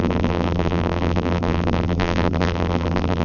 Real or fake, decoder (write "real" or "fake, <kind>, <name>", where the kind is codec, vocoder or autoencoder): fake, vocoder, BigVGAN v2